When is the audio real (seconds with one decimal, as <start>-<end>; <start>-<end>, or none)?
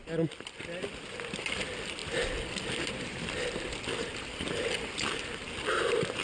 0.0-6.2